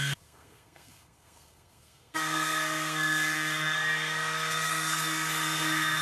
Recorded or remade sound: remade